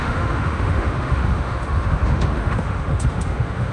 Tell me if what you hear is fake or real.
fake